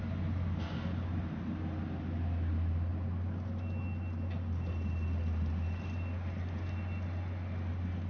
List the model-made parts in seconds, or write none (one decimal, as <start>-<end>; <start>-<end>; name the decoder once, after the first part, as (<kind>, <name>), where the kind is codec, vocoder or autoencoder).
none